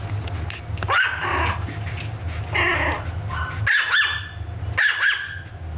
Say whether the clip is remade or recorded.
recorded